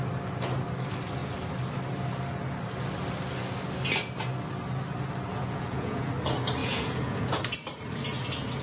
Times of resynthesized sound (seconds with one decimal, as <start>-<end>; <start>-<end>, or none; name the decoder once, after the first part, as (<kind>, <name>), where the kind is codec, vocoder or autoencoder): 5.3-6.1 (vocoder, Vocos); 6.6-7.4